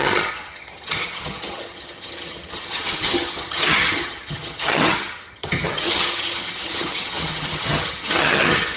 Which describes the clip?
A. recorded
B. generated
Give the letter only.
B